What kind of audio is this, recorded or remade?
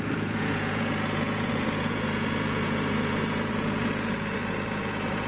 remade